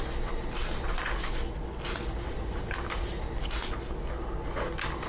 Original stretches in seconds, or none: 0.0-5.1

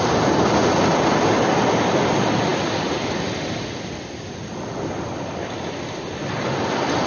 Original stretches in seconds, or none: 0.0-7.1

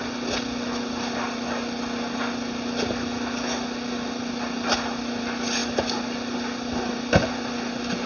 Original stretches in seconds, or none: 0.0-8.1

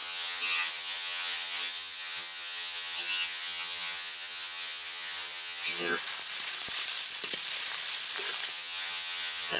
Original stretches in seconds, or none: 6.0-8.5

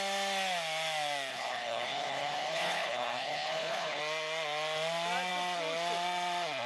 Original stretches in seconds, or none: 0.0-1.3; 4.0-6.7

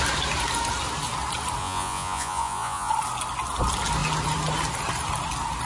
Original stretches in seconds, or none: 0.0-1.6; 2.9-5.7

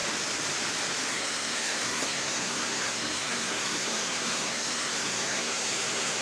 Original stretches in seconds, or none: 0.0-1.1